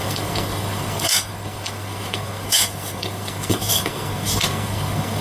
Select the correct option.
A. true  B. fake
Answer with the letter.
B